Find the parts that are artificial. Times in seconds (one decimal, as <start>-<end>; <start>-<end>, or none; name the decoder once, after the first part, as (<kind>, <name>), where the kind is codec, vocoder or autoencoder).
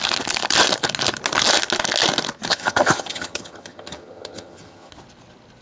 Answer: 2.5-4.9 (vocoder, HiFi-GAN)